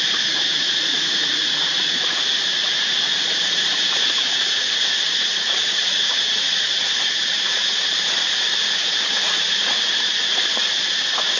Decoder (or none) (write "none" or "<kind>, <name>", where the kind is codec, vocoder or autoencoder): vocoder, Vocos